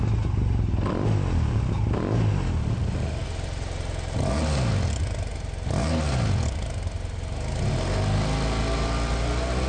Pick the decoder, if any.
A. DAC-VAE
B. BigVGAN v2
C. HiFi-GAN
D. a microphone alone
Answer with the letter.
D